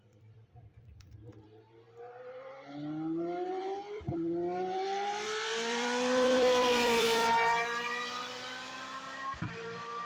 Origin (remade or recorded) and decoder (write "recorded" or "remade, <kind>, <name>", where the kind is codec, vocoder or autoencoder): remade, vocoder, BigVGAN v2